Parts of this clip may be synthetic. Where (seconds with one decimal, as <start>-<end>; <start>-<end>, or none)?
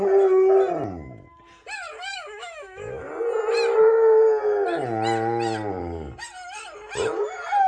2.1-3.1